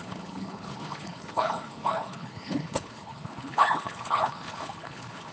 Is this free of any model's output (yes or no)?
no